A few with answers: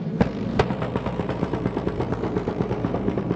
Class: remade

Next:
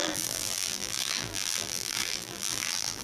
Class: remade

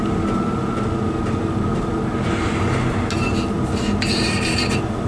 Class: recorded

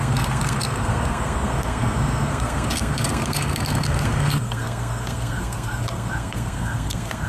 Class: remade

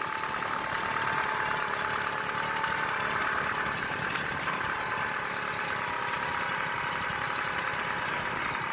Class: recorded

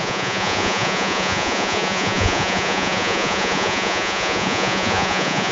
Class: remade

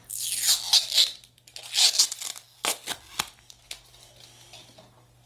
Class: recorded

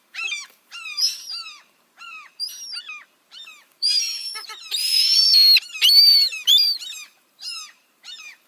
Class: remade